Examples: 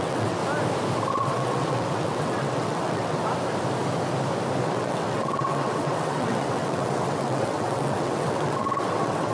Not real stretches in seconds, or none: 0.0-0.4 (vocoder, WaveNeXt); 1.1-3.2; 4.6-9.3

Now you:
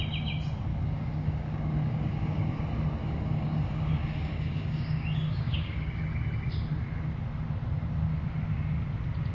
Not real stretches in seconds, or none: 0.7-2.6 (codec, DAC); 3.0-6.0

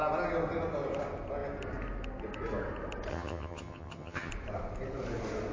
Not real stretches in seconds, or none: 3.1-4.3 (vocoder, HiFi-GAN)

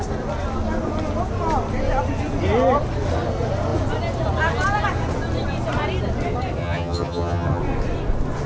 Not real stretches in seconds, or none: 6.6-7.6 (vocoder, HiFi-GAN)

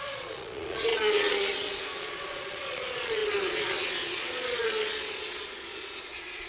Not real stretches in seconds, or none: 0.0-6.5 (vocoder, Vocos)

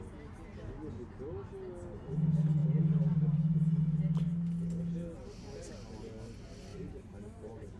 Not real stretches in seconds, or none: 2.6-3.8 (vocoder, BigVGAN v2); 6.7-7.8

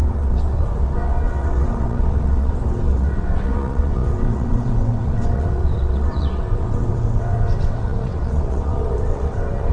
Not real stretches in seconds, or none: 0.0-9.7 (vocoder, WaveNeXt)